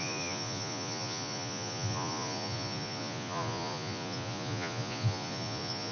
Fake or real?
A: fake